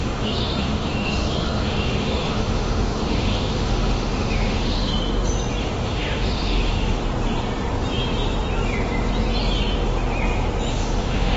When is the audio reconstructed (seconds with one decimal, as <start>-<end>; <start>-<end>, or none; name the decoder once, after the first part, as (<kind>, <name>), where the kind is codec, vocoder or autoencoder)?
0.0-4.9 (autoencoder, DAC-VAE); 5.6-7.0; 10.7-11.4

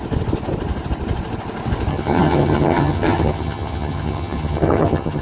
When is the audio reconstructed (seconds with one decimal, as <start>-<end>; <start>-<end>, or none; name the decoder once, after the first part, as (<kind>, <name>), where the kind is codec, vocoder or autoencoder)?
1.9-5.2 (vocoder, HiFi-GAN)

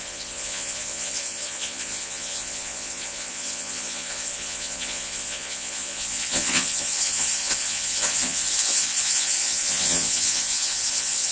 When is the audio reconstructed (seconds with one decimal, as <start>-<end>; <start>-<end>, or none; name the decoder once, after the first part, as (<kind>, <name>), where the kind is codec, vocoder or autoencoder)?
0.0-11.3 (vocoder, Vocos)

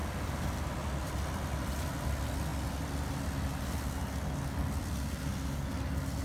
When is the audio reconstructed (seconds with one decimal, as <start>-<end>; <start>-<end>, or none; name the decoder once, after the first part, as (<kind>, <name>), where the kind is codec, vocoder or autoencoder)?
4.6-5.3 (vocoder, BigVGAN v2)

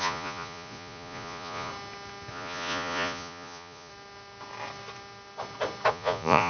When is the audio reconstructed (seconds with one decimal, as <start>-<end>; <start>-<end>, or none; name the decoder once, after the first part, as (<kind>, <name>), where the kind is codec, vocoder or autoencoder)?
0.0-1.7 (vocoder, Vocos); 2.3-3.9; 5.9-6.5

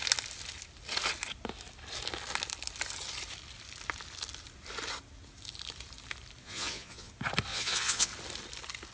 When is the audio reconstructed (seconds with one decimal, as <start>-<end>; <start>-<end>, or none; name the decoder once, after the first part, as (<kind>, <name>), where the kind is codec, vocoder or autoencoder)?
6.4-7.1 (vocoder, Vocos); 7.5-8.1

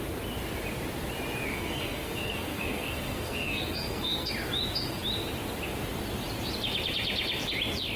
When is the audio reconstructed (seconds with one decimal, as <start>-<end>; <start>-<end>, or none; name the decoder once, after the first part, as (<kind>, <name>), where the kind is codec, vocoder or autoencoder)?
1.5-4.3 (codec, SNAC)

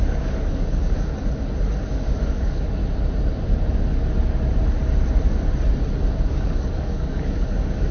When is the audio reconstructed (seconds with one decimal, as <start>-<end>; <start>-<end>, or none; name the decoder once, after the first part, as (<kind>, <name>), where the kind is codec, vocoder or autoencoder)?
0.0-1.1 (codec, DAC); 1.9-2.8; 6.3-7.9